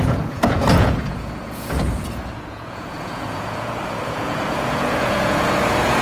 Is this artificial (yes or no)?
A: yes